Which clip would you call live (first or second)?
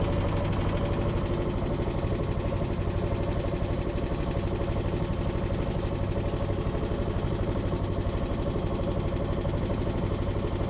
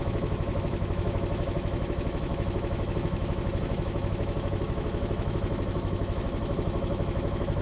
first